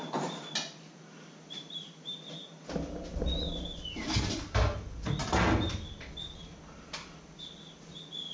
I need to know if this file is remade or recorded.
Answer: recorded